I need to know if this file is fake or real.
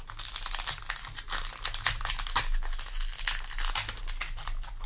real